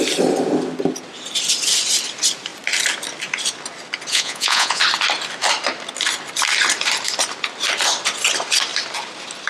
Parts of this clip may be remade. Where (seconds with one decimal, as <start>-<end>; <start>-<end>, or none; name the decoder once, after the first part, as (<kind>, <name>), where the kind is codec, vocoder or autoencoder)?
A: 4.1-4.8 (vocoder, Vocos)